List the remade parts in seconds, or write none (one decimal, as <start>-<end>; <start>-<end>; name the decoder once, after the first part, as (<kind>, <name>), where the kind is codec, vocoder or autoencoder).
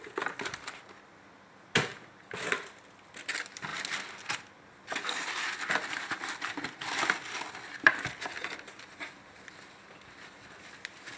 none